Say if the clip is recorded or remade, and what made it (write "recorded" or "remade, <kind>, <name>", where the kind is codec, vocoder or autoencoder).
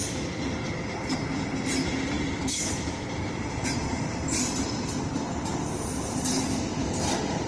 recorded